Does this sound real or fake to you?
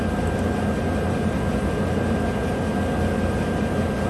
real